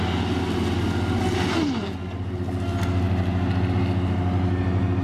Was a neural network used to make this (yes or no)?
no